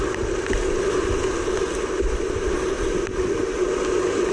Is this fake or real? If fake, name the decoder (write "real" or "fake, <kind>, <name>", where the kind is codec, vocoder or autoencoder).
real